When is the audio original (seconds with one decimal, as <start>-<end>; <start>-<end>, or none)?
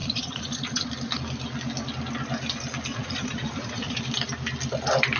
0.9-2.9; 4.0-5.2